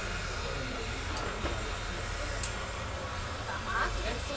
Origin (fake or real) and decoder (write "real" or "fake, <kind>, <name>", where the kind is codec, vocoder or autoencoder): real